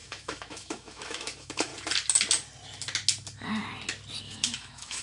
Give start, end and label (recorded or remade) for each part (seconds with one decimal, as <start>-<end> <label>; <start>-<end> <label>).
0.0-1.7 remade; 1.7-4.2 recorded; 4.2-5.0 remade